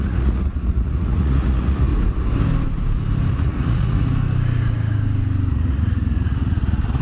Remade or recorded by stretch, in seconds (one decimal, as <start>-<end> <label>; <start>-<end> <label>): 0.0-1.9 remade; 1.9-3.3 recorded; 3.3-4.1 remade; 4.1-5.5 recorded; 5.5-7.0 remade